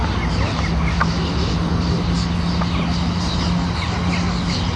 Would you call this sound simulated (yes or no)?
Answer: no